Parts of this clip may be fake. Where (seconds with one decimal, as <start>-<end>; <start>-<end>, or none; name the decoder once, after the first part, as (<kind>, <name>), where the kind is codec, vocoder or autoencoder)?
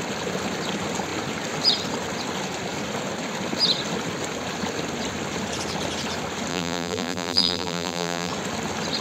6.5-8.3 (vocoder, BigVGAN v2)